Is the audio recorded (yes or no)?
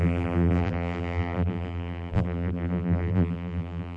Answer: no